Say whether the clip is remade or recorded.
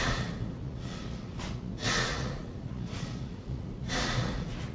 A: remade